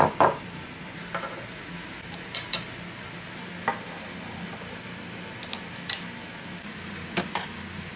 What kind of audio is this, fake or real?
real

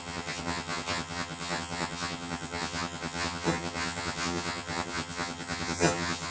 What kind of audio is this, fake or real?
fake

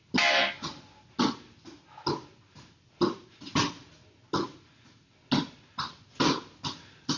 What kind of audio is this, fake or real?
real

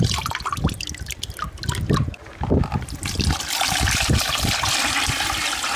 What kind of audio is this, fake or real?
real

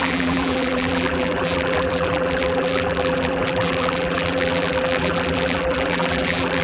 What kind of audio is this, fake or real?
fake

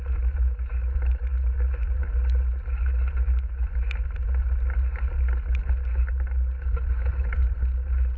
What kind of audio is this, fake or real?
real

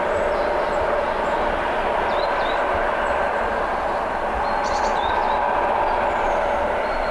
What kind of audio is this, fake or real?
real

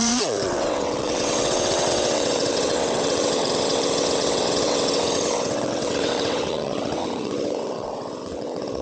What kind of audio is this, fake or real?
fake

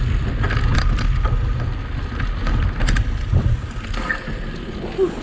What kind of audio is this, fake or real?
real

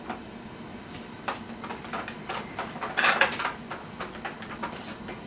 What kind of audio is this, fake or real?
real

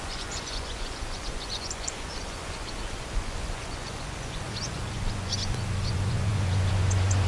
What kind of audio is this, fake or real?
fake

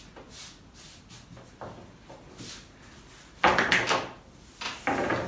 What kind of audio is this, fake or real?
real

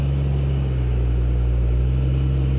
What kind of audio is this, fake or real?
real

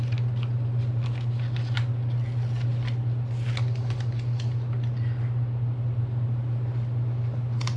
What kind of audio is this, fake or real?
real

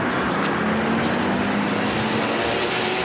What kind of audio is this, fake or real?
real